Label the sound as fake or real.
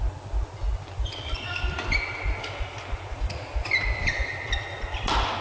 real